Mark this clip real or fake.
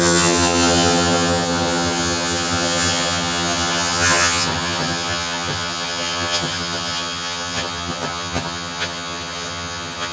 fake